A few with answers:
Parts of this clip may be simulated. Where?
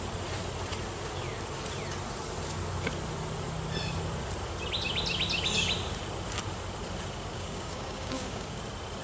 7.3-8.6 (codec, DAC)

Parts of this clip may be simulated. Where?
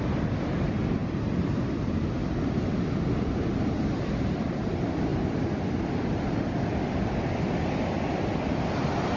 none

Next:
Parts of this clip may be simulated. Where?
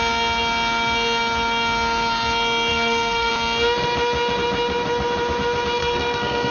2.7-3.3 (codec, SNAC); 5.8-6.5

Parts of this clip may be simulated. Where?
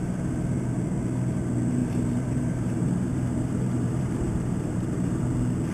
1.8-5.2 (vocoder, BigVGAN v2)